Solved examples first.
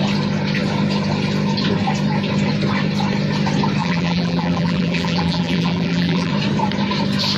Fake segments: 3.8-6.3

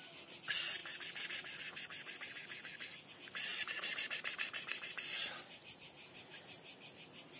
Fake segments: 3.5-6.2